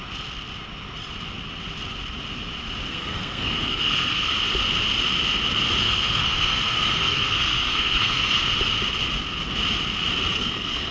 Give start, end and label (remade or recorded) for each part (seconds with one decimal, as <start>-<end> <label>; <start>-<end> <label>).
0.0-2.9 recorded; 2.9-4.3 remade; 4.3-5.8 recorded; 5.8-8.4 remade; 8.4-10.3 recorded; 10.3-10.9 remade